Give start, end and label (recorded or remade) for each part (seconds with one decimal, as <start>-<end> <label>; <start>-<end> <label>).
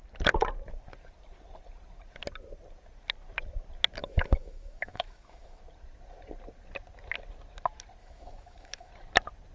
0.0-4.0 recorded; 4.0-5.6 remade; 5.6-8.0 recorded; 8.0-8.9 remade; 8.9-9.5 recorded